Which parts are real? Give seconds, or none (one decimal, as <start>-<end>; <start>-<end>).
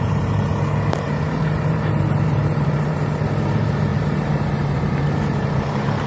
0.5-1.0